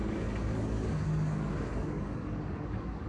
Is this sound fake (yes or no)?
yes